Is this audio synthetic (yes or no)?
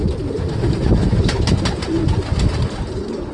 no